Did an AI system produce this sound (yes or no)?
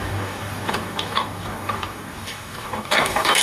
yes